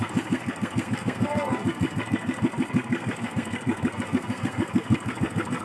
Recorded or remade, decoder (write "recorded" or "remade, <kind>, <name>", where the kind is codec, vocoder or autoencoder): remade, codec, SNAC